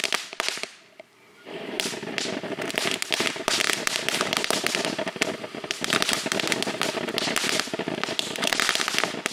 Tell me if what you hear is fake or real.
fake